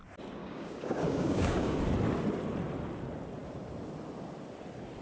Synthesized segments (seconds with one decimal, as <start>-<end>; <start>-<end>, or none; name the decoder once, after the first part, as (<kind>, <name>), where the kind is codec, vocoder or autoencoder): 0.4-1.8 (codec, DAC)